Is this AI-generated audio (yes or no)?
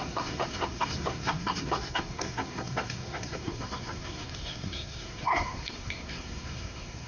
yes